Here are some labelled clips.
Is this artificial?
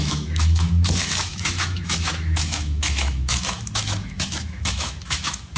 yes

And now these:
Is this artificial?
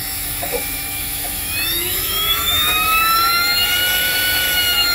yes